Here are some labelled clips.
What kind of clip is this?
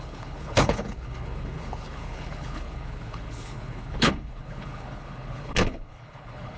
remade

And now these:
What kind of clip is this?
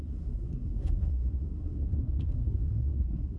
remade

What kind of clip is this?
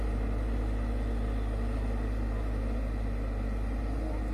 recorded